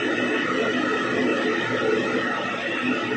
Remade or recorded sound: recorded